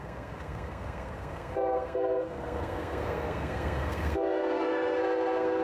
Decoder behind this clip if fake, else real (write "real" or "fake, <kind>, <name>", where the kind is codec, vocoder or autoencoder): fake, codec, SNAC